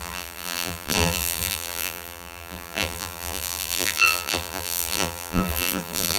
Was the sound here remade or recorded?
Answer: remade